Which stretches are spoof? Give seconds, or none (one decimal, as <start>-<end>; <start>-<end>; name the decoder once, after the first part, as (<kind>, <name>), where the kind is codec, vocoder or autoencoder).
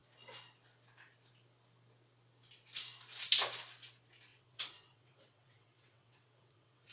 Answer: 4.3-6.9 (vocoder, WaveNeXt)